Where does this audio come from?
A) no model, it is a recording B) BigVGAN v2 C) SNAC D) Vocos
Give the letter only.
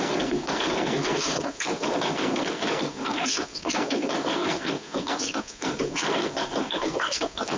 C